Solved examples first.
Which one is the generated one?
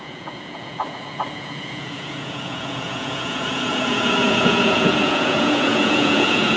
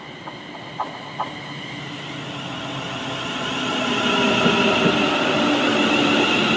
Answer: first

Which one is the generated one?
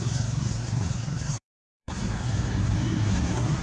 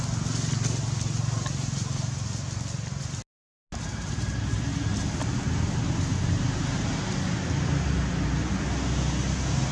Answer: first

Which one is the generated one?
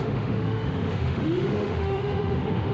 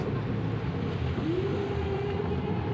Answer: first